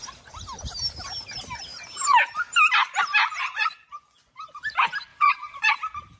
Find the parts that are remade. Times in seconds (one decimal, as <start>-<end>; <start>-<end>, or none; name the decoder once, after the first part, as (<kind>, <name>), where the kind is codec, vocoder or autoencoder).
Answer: 3.5-4.3 (vocoder, Vocos); 5.1-5.7